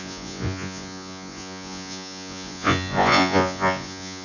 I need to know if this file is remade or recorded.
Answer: remade